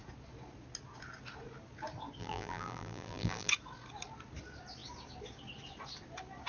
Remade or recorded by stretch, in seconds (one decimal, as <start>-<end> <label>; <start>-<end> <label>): 0.0-2.2 recorded; 2.2-3.5 remade; 3.5-6.5 recorded